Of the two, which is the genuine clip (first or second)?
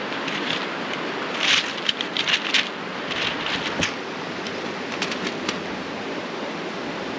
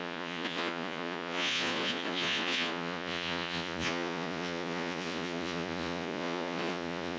first